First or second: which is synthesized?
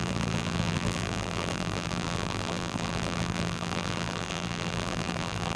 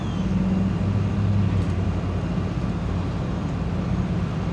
first